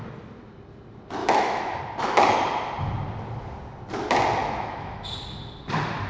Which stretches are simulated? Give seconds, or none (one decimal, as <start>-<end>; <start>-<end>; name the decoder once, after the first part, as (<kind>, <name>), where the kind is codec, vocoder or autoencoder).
1.2-1.8 (autoencoder, DAC-VAE); 4.4-5.1